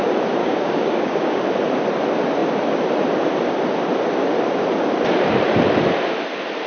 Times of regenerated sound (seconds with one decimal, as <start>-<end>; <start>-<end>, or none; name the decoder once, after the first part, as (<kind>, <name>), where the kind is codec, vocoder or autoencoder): 0.4-1.4 (codec, DAC)

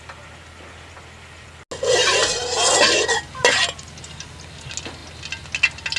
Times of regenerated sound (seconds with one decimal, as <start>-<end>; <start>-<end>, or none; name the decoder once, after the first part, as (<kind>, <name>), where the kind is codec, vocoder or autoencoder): none

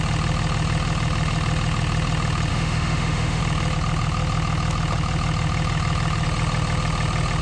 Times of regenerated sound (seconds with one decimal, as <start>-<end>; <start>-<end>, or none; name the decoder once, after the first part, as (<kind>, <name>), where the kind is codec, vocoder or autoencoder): 2.5-3.4 (autoencoder, DAC-VAE)

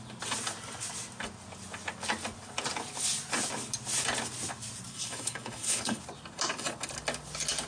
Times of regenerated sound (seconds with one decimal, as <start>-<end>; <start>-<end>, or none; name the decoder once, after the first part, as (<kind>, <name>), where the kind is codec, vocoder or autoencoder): 4.9-6.0 (codec, HILCodec)

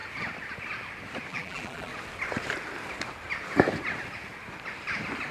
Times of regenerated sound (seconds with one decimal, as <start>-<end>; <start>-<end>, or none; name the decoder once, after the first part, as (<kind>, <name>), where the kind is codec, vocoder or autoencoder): 1.3-1.9 (vocoder, BigVGAN v2)

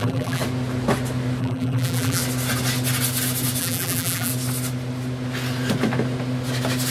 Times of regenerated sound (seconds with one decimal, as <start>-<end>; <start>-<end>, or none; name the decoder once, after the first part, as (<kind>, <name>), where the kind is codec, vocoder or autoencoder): 0.0-0.4 (vocoder, BigVGAN v2); 1.4-2.2; 3.6-4.3